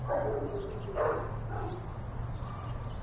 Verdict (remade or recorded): recorded